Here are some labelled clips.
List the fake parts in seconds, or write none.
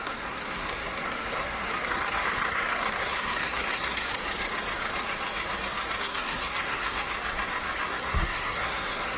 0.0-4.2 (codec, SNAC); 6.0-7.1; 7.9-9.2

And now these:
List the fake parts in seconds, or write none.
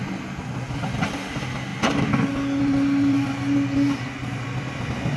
none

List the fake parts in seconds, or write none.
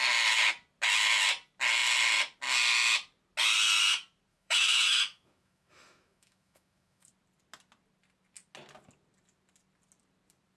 4.3-7.1 (autoencoder, DAC-VAE)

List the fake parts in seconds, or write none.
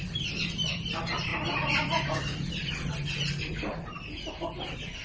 none